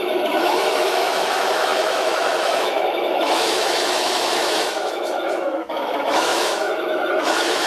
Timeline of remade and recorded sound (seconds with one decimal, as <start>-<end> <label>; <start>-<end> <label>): 0.0-7.7 remade